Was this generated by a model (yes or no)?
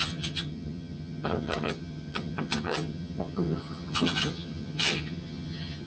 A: yes